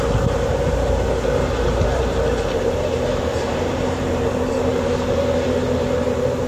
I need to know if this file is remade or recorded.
remade